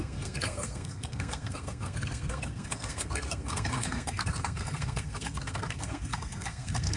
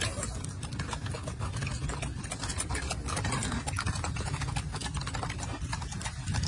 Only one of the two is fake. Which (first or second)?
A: first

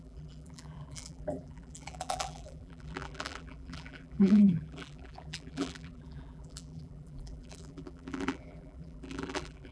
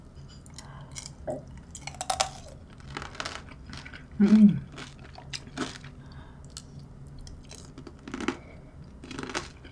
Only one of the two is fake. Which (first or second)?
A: first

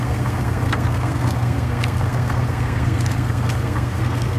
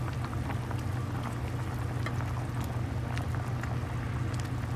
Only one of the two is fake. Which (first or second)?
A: first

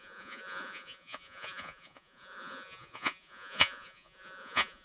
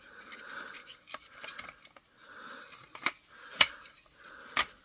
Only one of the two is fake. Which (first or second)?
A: first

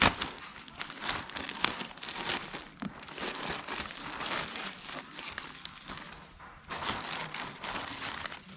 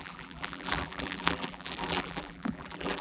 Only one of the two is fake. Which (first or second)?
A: second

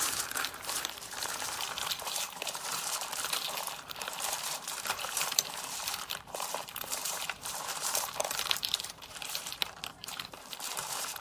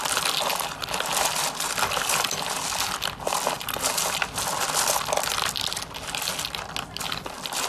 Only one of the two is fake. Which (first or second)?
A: first